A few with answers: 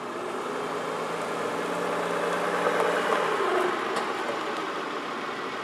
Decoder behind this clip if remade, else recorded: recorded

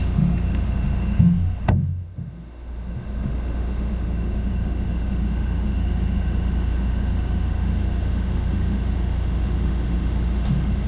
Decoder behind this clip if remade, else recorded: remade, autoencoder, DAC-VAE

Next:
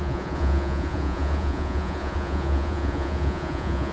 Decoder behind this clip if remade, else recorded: remade, vocoder, Vocos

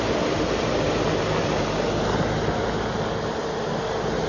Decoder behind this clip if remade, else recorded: recorded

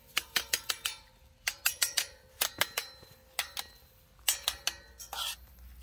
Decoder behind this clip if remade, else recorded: recorded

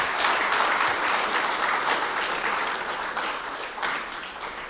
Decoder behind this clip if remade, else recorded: remade, vocoder, BigVGAN v2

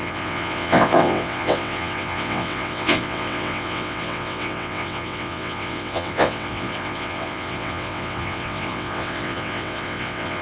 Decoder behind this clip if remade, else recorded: remade, vocoder, WaveNeXt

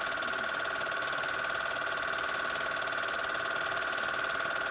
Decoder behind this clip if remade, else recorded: recorded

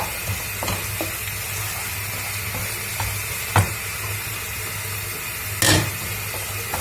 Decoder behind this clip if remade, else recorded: recorded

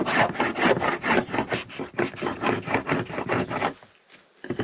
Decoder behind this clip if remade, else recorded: recorded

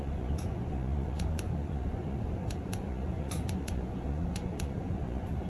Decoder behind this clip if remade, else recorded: remade, vocoder, Vocos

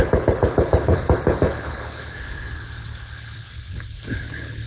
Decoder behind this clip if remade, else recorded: remade, codec, HILCodec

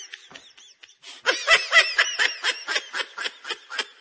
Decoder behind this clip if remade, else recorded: recorded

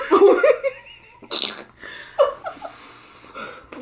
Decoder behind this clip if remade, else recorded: recorded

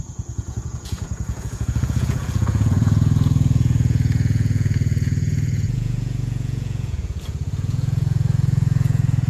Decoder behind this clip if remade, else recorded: remade, vocoder, Vocos